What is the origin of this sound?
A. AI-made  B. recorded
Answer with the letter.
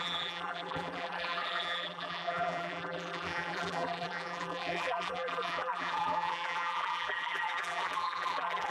A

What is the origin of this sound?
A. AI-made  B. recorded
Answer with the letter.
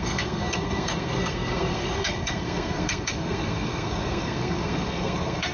A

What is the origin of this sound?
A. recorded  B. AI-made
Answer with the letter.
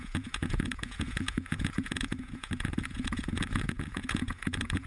B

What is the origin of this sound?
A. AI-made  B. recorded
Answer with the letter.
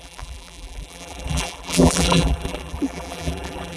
A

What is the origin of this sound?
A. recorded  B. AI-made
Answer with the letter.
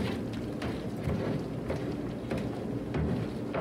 A